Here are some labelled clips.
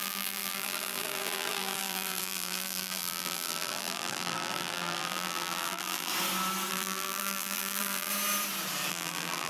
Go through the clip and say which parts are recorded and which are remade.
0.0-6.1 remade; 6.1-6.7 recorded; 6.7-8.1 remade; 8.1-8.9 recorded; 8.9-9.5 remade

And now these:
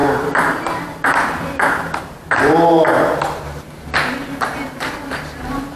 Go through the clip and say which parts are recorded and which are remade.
0.0-2.9 remade; 2.9-4.4 recorded; 4.4-5.8 remade

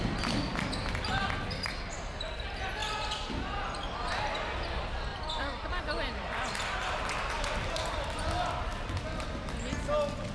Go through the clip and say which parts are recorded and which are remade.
0.0-5.1 recorded; 5.1-5.8 remade; 5.8-10.3 recorded

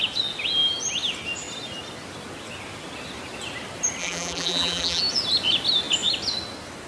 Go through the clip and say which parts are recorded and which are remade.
0.0-4.0 recorded; 4.0-5.0 remade; 5.0-6.9 recorded

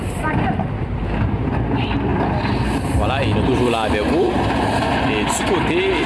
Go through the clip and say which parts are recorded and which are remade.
0.0-6.1 recorded

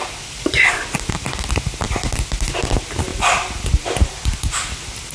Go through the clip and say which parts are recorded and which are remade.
0.0-0.9 remade; 0.9-5.1 recorded